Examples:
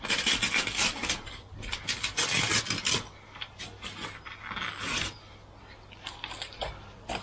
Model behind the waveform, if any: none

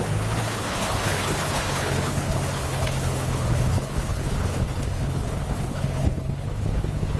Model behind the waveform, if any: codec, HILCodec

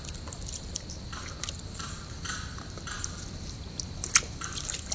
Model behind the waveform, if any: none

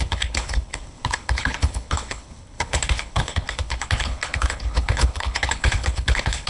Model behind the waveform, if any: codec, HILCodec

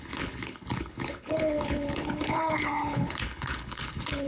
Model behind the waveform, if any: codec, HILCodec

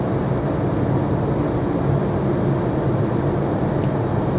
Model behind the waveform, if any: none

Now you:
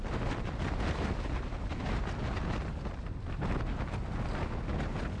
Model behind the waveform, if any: none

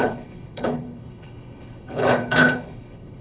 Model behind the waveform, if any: codec, HILCodec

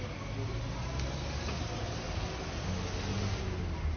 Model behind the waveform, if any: none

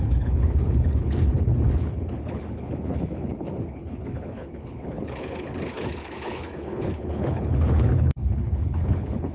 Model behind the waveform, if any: codec, HILCodec